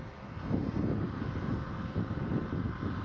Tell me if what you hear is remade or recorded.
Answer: recorded